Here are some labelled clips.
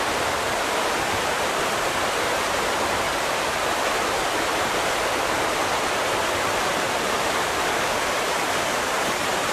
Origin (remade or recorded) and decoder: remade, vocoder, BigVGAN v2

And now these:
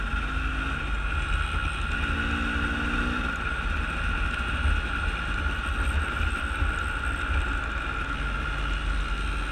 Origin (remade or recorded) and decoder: recorded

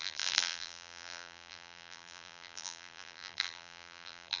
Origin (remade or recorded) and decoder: remade, vocoder, BigVGAN v2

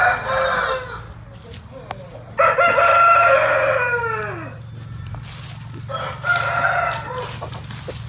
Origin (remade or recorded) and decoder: recorded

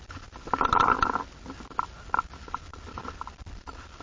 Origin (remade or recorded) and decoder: remade, vocoder, BigVGAN v2